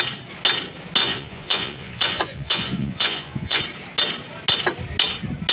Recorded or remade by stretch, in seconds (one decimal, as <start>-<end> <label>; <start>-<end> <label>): 0.0-1.0 recorded; 1.0-3.6 remade; 3.6-5.5 recorded